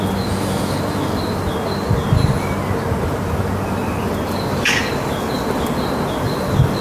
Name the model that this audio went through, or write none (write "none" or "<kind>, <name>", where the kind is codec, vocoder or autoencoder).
none